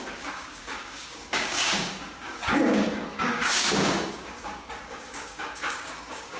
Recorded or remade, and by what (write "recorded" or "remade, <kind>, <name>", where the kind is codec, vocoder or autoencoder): remade, codec, DAC